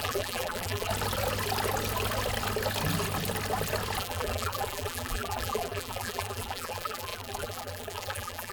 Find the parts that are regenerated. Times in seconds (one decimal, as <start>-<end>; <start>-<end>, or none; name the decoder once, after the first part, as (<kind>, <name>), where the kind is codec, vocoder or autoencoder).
0.0-0.9 (vocoder, BigVGAN v2); 4.0-8.5